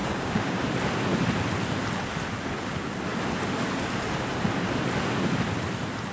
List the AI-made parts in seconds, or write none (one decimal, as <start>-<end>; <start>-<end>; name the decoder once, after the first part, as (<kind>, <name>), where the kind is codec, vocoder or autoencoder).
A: 0.0-0.6 (codec, DAC)